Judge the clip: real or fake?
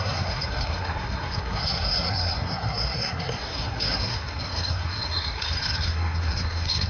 fake